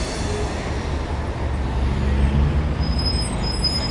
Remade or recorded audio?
recorded